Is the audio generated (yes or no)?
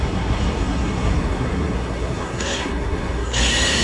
yes